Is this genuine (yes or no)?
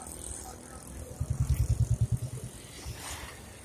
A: yes